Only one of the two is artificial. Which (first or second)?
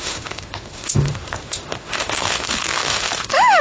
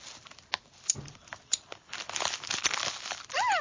first